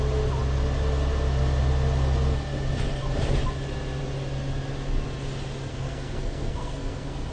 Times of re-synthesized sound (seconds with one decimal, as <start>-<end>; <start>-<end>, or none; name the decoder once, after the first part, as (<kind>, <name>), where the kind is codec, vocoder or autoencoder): 5.7-7.3 (codec, SNAC)